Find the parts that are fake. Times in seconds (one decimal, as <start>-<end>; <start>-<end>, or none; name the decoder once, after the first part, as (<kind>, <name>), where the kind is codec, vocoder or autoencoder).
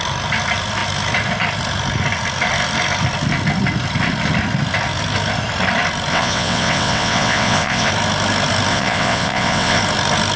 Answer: 6.1-7.9 (vocoder, WaveNeXt); 8.7-9.8